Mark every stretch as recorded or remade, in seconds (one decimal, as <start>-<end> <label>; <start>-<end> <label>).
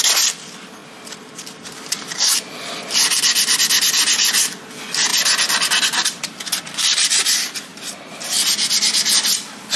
0.0-0.8 recorded; 0.8-2.5 remade; 2.5-7.7 recorded; 7.7-8.5 remade; 8.5-9.8 recorded